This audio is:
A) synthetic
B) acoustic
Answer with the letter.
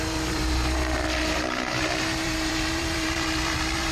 A